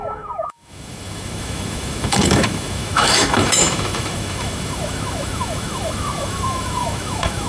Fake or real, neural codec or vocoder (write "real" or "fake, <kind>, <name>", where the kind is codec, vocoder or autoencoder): fake, autoencoder, DAC-VAE